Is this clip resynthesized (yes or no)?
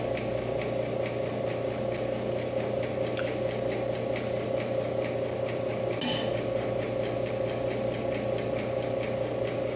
no